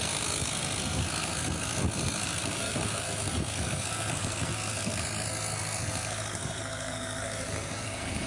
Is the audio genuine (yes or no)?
no